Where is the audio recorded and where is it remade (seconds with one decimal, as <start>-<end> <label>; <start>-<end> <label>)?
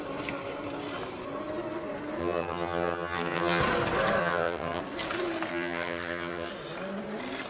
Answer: 0.0-2.2 recorded; 2.2-3.6 remade; 3.6-4.2 recorded; 4.2-4.8 remade; 4.8-5.5 recorded; 5.5-6.5 remade; 6.5-7.5 recorded